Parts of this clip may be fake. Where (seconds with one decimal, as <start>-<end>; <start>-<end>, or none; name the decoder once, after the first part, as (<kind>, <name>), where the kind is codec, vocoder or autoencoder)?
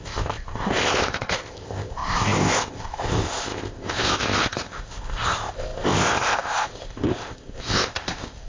0.0-8.5 (codec, ZipCodec)